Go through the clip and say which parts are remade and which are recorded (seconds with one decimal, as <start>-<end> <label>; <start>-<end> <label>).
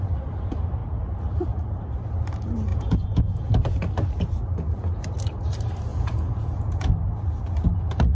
0.0-2.7 recorded; 2.7-3.5 remade; 3.5-5.9 recorded; 5.9-6.9 remade; 6.9-8.1 recorded